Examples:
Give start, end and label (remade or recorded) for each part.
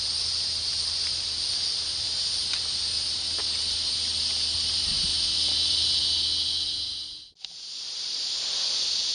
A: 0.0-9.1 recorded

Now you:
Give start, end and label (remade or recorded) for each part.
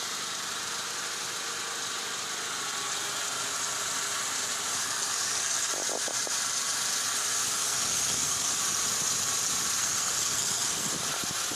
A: 0.0-4.7 recorded; 4.7-5.7 remade; 5.7-7.6 recorded; 7.6-8.6 remade; 8.6-9.8 recorded; 9.8-10.9 remade; 10.9-11.6 recorded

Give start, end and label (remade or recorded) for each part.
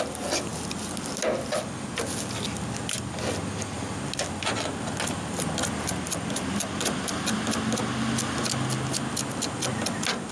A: 0.0-10.3 recorded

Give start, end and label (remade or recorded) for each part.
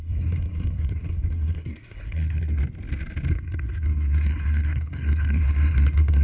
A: 0.0-2.6 remade; 2.6-3.3 recorded; 3.3-6.2 remade